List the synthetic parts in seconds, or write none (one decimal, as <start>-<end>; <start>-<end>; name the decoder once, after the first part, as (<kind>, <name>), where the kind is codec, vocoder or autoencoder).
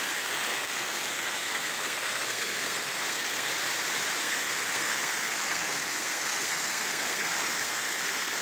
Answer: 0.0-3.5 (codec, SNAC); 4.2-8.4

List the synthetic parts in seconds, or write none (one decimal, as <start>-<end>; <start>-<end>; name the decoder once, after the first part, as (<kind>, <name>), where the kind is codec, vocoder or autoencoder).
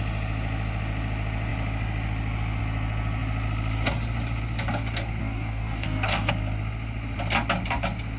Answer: 5.2-6.3 (codec, DAC)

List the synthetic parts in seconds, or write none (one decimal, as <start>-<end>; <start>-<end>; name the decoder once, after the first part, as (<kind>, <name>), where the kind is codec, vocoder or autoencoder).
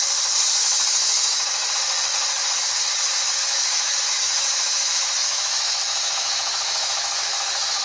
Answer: 0.6-1.7 (autoencoder, DAC-VAE); 3.4-7.8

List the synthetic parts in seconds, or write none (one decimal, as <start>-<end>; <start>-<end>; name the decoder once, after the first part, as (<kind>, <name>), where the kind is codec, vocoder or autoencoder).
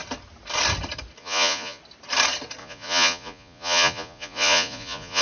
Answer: 1.2-1.8 (vocoder, Vocos); 2.6-5.2